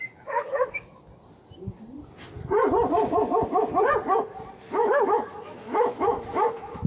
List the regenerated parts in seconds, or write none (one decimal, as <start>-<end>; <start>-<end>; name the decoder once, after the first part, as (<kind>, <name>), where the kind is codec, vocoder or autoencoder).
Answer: 0.0-1.1 (autoencoder, DAC-VAE); 4.7-6.9